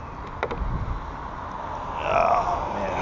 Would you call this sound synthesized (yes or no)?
no